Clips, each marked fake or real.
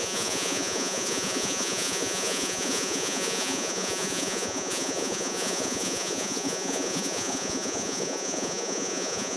fake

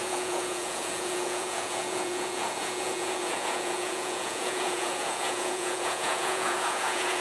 fake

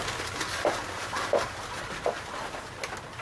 real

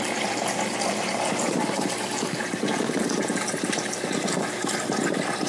real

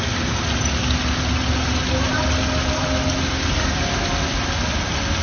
real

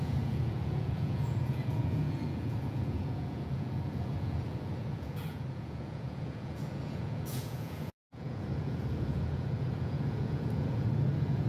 fake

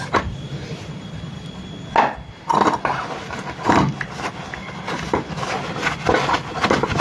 real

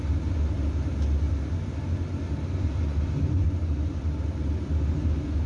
real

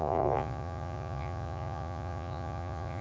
fake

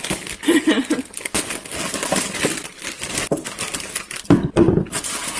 real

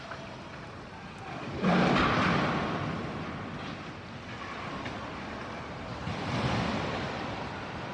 real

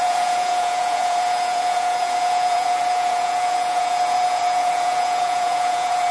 fake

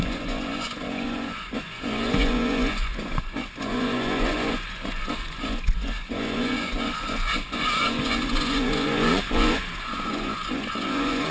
fake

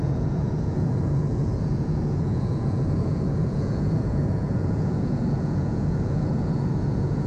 fake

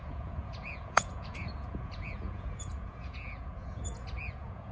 fake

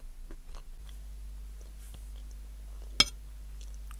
real